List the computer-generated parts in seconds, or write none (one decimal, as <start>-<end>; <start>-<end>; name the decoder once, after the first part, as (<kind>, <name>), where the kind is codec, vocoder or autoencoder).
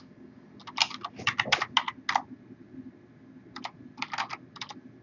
none